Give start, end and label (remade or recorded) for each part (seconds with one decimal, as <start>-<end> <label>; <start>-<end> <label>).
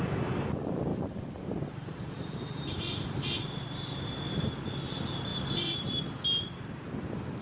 0.0-0.9 recorded; 0.9-4.5 remade; 4.5-5.3 recorded; 5.3-6.1 remade; 6.1-7.4 recorded